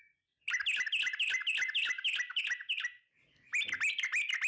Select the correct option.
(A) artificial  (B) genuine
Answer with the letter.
B